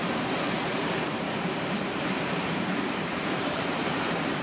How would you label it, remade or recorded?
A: remade